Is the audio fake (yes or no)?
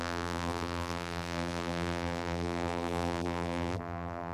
yes